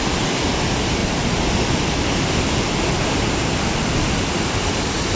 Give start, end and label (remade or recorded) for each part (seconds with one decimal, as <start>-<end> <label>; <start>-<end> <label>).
0.0-5.2 recorded